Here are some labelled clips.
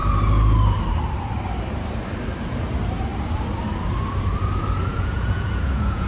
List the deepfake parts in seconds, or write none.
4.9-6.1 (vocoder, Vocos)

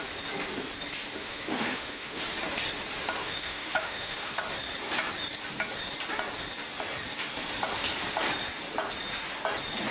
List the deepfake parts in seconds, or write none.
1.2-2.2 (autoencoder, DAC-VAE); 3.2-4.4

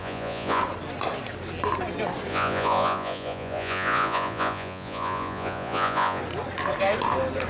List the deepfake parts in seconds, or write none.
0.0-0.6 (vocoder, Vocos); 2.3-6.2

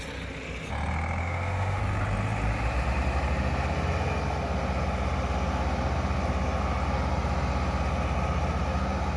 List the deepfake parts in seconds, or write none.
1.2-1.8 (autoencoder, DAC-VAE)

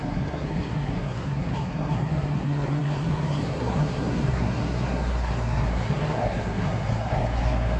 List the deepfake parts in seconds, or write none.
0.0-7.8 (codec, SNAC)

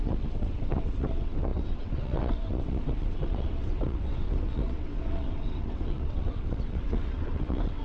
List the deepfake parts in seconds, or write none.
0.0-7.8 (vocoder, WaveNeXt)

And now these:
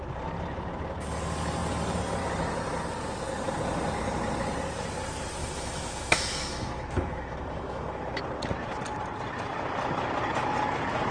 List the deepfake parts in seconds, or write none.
5.4-8.2 (autoencoder, DAC-VAE)